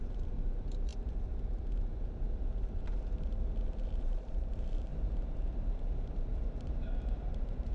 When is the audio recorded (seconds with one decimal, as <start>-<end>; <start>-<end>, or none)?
4.9-5.6